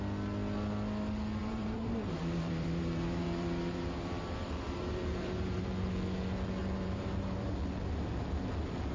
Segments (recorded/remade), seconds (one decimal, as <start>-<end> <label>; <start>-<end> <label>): 0.0-1.4 recorded; 1.4-5.9 remade; 5.9-6.6 recorded; 6.6-7.4 remade; 7.4-8.9 recorded